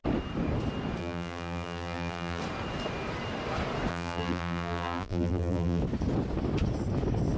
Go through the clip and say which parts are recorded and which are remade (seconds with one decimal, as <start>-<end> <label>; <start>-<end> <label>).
0.0-1.0 recorded; 1.0-2.4 remade; 2.4-3.9 recorded; 3.9-5.8 remade; 5.8-7.4 recorded